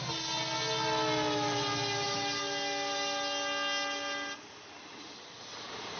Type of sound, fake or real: real